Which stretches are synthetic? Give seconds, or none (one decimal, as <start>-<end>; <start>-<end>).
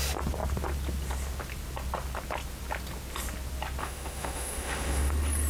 3.8-5.1